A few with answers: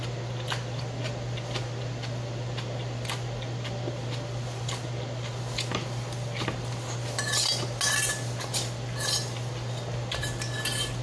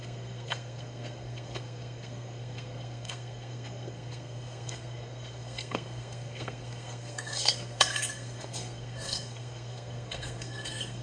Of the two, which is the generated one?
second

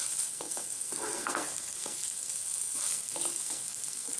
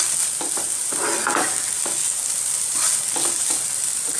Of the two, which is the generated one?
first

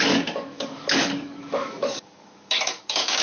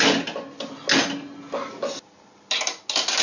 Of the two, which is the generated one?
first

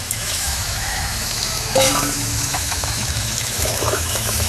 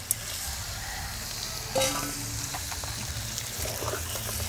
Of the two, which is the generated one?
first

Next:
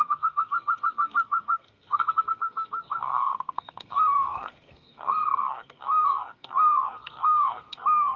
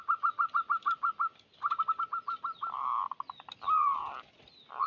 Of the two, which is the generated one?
first